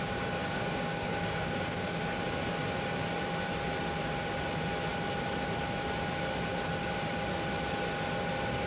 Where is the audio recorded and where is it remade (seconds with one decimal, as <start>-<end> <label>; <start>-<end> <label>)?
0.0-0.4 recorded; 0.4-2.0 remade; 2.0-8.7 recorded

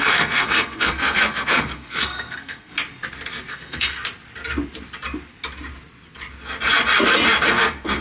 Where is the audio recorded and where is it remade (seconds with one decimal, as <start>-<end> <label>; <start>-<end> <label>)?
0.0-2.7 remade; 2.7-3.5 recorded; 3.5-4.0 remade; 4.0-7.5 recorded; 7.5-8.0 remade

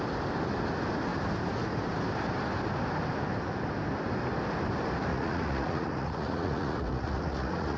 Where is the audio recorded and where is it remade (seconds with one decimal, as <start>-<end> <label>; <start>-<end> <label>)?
0.0-5.1 recorded; 5.1-7.8 remade

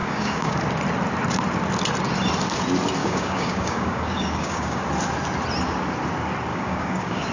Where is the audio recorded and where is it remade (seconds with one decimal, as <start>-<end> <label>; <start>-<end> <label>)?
0.0-0.6 remade; 0.6-3.0 recorded; 3.0-4.8 remade; 4.8-6.5 recorded; 6.5-7.3 remade

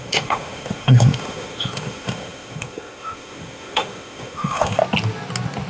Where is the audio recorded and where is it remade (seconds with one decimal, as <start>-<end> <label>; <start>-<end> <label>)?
0.0-4.8 remade; 4.8-5.7 recorded

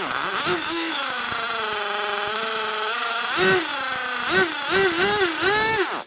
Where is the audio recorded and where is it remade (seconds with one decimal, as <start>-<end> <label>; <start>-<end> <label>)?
0.0-0.5 recorded; 0.5-1.2 remade; 1.2-2.3 recorded; 2.3-3.2 remade; 3.2-6.1 recorded

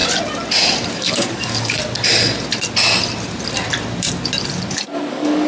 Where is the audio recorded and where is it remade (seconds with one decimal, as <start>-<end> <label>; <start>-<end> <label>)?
0.0-0.9 recorded; 0.9-1.8 remade; 1.8-5.1 recorded; 5.1-5.5 remade